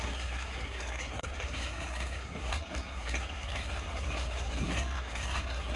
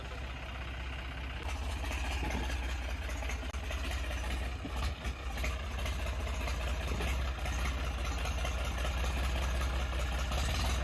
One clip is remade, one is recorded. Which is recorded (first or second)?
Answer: second